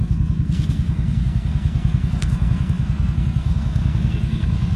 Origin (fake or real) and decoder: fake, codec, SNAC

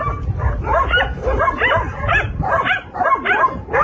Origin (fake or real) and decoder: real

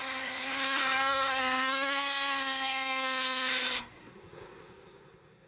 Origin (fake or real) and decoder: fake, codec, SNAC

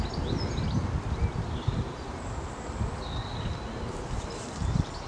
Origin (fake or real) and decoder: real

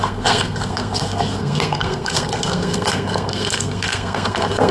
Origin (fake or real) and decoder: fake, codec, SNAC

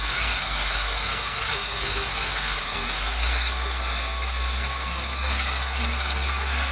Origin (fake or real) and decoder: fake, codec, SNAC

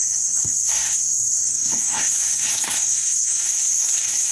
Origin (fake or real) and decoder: fake, codec, SNAC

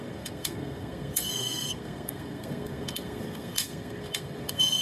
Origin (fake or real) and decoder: fake, codec, SNAC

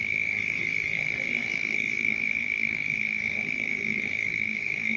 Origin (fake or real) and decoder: fake, codec, SNAC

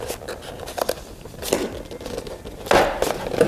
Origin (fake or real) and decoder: real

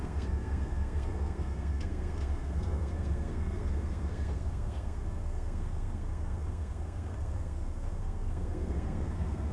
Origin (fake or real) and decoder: fake, codec, SNAC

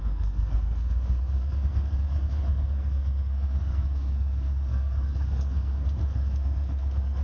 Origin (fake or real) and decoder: fake, codec, SNAC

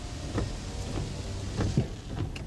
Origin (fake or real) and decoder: real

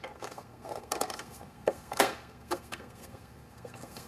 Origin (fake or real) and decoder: fake, codec, SNAC